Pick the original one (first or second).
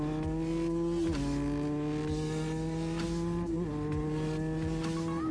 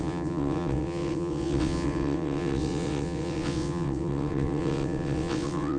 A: first